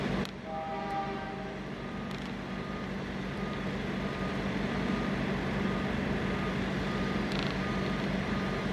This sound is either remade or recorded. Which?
recorded